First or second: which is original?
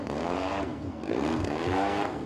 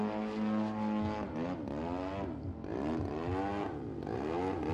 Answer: second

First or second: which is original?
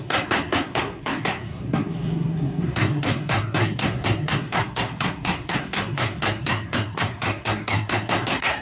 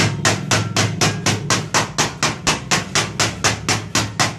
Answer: second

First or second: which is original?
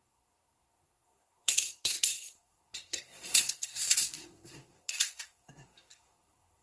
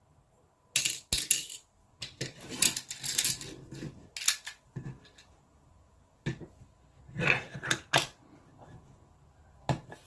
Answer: second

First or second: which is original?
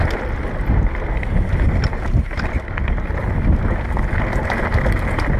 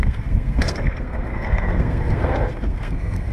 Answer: first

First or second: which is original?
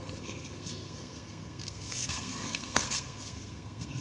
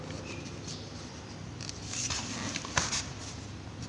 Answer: second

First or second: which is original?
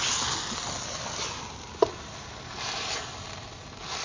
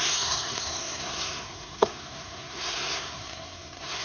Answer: first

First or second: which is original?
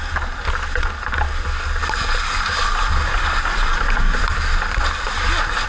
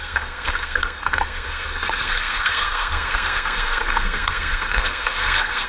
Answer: first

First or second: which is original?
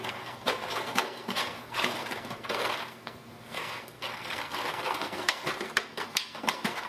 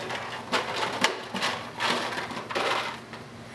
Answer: second